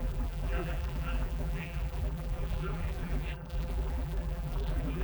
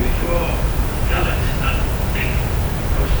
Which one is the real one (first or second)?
second